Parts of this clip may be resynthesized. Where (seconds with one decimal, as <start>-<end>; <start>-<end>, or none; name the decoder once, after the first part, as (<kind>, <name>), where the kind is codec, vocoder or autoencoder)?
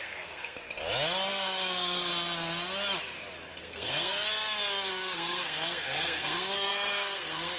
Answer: 0.0-0.6 (codec, SNAC); 1.3-2.1; 3.6-4.3; 4.9-7.6